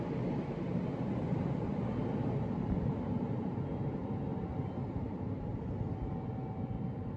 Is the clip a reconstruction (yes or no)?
no